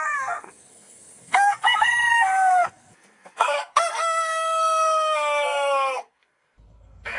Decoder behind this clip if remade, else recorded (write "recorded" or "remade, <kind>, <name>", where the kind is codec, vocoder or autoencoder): remade, codec, SNAC